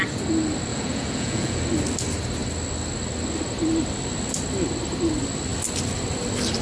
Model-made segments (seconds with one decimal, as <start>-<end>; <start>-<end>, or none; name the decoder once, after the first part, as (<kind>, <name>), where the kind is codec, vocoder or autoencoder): 0.7-1.6 (vocoder, Vocos)